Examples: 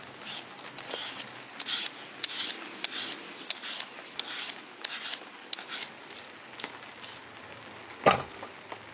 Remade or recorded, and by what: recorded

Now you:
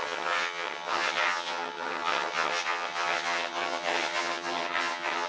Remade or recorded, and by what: remade, vocoder, HiFi-GAN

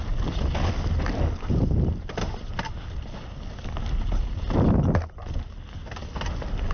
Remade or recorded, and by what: recorded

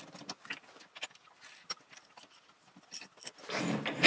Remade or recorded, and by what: recorded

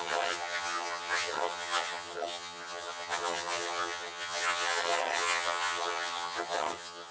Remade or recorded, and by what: remade, vocoder, HiFi-GAN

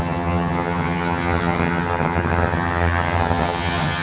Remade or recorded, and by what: remade, vocoder, HiFi-GAN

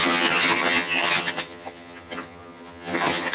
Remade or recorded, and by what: remade, vocoder, HiFi-GAN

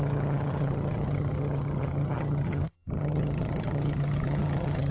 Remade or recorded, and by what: remade, vocoder, HiFi-GAN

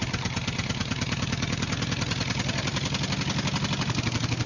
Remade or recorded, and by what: recorded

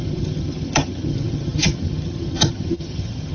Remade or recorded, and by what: remade, vocoder, HiFi-GAN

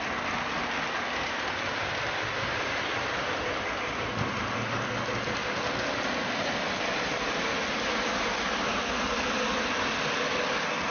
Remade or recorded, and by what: recorded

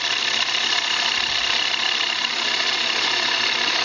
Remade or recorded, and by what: recorded